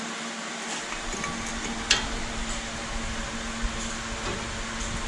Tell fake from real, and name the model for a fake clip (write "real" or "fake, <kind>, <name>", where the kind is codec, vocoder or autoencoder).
real